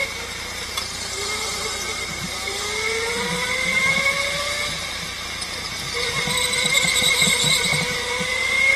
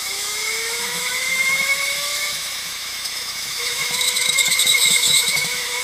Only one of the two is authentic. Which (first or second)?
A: first